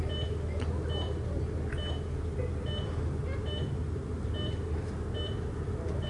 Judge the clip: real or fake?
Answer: real